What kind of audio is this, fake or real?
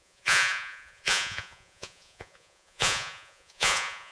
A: fake